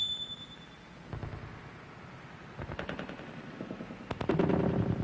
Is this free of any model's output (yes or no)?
yes